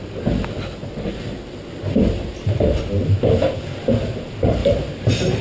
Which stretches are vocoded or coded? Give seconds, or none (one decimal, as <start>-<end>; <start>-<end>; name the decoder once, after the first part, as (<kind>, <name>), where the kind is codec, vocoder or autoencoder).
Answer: 4.6-5.4 (vocoder, BigVGAN v2)